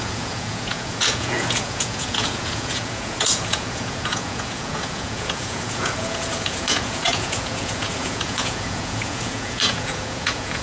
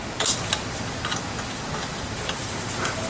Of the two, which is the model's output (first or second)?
first